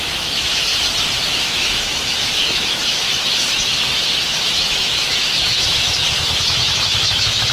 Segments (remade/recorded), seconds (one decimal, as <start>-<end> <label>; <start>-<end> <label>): 0.0-0.7 remade; 0.7-1.3 recorded; 1.3-7.5 remade